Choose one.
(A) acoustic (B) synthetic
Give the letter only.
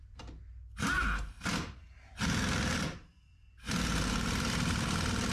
A